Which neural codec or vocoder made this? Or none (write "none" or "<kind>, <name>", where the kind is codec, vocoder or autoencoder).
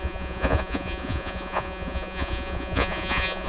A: vocoder, Vocos